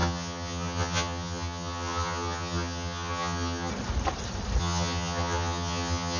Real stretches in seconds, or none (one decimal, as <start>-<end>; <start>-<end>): 3.7-4.6